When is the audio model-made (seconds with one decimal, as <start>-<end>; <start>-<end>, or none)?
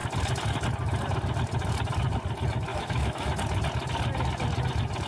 2.7-3.3